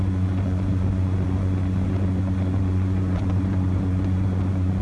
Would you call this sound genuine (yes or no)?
no